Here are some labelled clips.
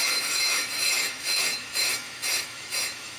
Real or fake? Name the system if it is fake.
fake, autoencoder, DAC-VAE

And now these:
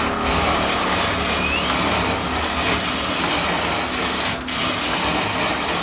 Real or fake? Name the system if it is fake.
real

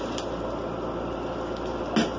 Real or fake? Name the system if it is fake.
real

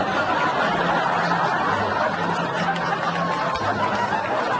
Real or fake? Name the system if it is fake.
real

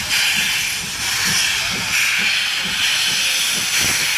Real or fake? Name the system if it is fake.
real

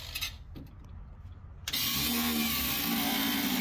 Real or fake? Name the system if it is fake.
real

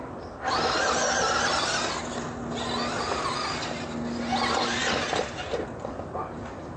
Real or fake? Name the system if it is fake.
real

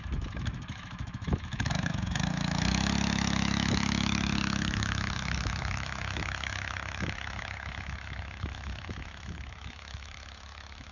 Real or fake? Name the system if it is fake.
fake, autoencoder, DAC-VAE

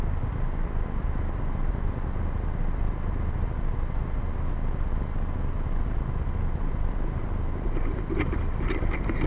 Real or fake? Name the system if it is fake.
real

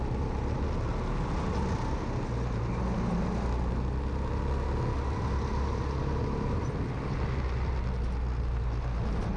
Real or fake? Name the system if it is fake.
real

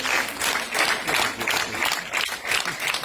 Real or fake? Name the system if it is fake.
real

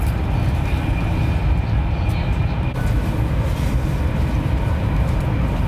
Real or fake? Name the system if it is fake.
real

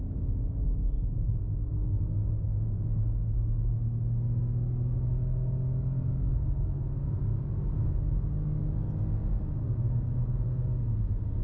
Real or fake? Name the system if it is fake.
real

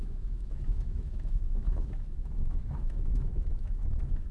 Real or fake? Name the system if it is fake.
fake, autoencoder, DAC-VAE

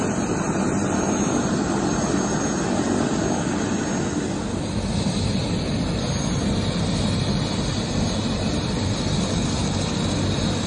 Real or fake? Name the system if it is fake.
real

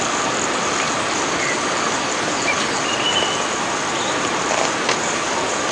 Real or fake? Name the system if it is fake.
real